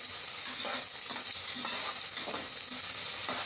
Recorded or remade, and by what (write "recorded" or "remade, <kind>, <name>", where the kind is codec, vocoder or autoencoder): recorded